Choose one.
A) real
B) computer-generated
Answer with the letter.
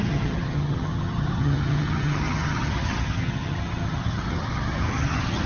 B